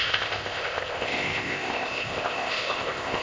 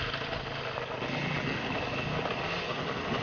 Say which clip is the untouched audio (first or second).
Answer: second